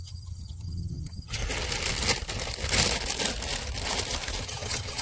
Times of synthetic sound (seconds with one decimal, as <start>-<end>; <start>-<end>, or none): 0.0-1.4; 4.4-5.0